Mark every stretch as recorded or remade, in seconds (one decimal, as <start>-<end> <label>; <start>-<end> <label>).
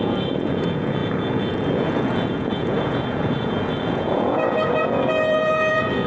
0.0-6.1 remade